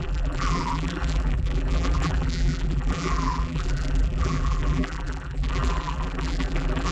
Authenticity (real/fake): fake